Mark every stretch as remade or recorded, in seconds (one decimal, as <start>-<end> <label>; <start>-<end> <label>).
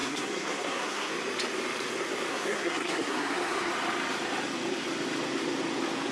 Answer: 0.0-1.1 remade; 1.1-2.3 recorded; 2.3-3.7 remade; 3.7-6.1 recorded